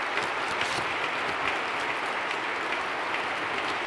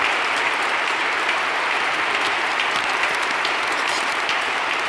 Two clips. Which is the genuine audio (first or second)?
first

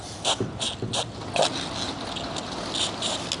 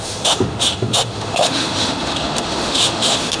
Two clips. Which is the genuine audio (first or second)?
first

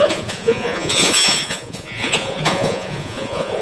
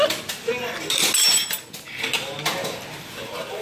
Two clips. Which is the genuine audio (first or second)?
second